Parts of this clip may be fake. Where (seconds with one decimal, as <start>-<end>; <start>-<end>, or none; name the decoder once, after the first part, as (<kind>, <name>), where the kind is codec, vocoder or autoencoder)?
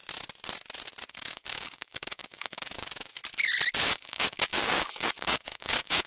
1.1-3.2 (codec, DAC); 3.9-6.1